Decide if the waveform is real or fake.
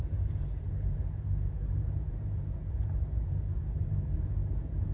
fake